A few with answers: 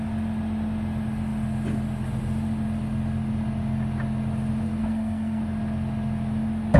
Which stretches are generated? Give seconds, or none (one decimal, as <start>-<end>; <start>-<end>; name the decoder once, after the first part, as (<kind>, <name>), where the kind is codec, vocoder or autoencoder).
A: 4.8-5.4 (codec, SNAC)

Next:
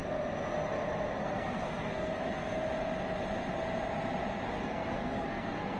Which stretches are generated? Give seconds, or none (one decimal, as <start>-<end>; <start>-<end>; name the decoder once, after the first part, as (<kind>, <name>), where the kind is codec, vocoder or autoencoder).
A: 1.2-2.1 (codec, SNAC); 4.6-5.8

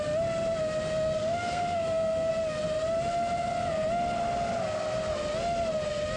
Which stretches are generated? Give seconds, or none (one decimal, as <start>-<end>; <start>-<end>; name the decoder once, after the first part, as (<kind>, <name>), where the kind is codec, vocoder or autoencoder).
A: 1.2-2.3 (codec, SNAC)

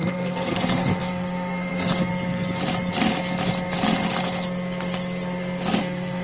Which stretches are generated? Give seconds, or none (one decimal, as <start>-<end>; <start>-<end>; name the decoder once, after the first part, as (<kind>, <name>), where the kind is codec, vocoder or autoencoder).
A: 0.0-2.1 (codec, SNAC); 5.8-6.2

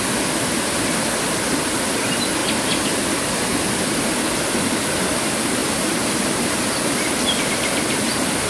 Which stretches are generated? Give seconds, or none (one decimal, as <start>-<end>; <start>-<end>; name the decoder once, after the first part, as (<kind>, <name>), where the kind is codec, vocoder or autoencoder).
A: none

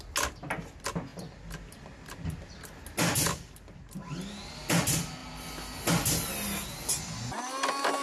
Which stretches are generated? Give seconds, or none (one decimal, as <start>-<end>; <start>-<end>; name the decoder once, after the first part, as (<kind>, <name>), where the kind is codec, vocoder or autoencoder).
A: none

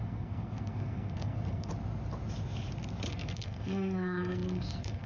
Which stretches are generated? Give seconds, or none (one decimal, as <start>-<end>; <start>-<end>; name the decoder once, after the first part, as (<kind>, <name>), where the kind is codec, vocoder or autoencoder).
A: 0.0-1.7 (codec, SNAC); 3.1-5.1

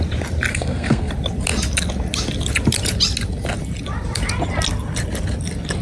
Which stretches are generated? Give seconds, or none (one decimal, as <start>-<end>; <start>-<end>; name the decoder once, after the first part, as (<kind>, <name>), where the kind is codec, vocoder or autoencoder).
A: 0.5-1.1 (codec, SNAC)